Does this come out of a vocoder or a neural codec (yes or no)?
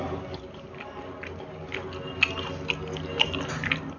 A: no